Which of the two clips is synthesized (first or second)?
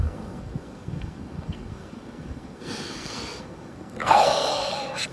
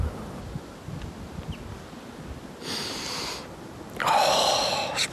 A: first